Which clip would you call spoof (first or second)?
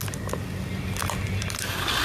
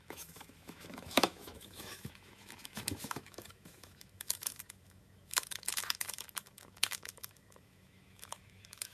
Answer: second